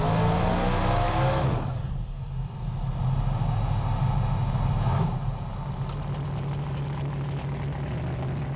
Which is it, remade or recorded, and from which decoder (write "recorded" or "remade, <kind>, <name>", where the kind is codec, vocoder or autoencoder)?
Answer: recorded